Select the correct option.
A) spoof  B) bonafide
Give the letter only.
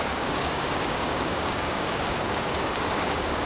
A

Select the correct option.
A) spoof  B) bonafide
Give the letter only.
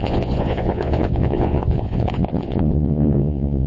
A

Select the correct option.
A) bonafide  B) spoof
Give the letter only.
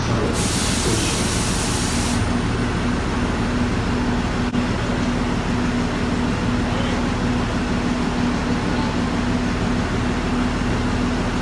A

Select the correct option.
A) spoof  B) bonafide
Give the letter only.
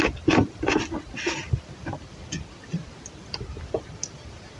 A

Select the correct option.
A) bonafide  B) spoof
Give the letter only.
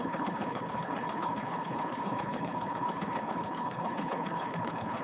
B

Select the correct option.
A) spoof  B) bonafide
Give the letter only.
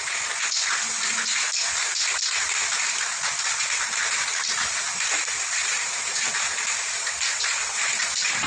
B